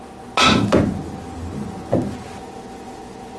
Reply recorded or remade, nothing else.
recorded